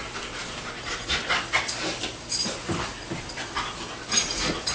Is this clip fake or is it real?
real